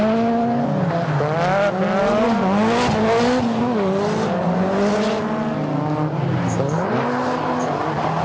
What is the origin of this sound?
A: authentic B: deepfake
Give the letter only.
A